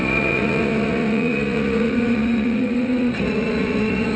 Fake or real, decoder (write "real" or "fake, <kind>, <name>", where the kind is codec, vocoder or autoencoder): fake, vocoder, Vocos